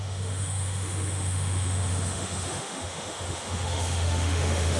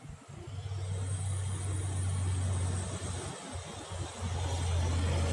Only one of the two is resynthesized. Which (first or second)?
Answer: first